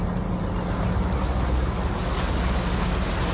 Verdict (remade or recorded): recorded